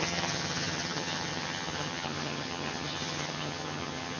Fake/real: fake